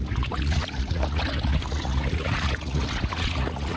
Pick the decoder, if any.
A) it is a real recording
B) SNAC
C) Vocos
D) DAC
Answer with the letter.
C